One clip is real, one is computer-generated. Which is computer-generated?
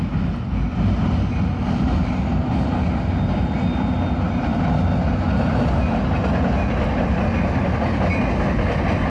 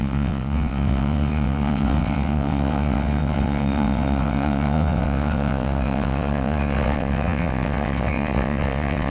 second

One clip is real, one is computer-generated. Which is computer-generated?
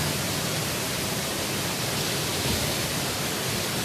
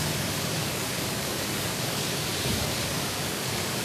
second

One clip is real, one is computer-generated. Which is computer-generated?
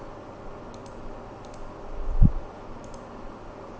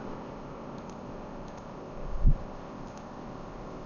second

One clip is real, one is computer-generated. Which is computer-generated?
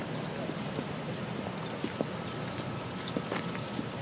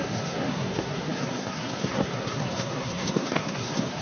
second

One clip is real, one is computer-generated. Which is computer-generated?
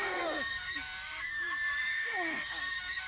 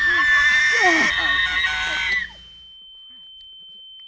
first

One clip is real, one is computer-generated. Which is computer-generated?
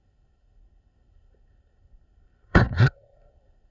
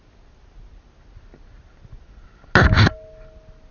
first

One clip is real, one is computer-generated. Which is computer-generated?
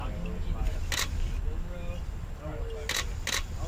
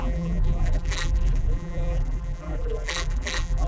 second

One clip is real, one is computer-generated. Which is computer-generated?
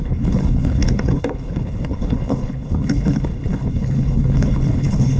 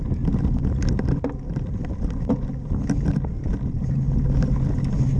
first